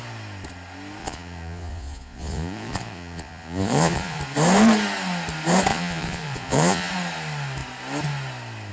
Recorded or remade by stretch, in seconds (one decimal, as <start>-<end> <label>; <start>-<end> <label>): 0.0-1.0 recorded; 1.0-4.2 remade; 4.2-5.7 recorded; 5.7-6.9 remade; 6.9-8.7 recorded